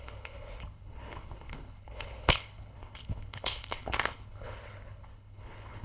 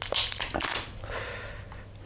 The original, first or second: second